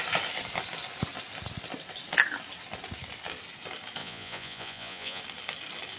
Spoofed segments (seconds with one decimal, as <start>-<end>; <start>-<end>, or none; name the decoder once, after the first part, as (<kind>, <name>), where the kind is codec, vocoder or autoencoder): 4.0-5.2 (vocoder, Vocos)